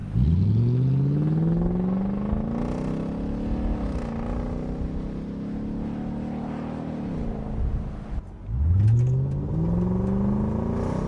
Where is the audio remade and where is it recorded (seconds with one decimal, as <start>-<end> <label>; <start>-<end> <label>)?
0.0-11.1 recorded